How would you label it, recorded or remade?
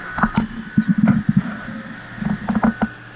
recorded